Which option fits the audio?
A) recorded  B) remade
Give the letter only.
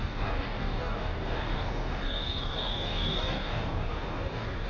B